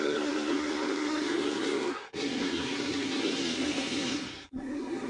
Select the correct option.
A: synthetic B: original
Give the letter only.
A